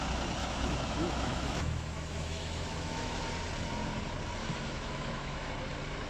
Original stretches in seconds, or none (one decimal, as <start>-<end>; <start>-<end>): 0.0-0.4; 3.2-4.4; 5.5-6.1